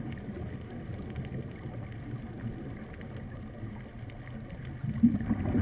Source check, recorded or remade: recorded